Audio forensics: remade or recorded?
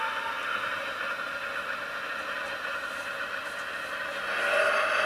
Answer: recorded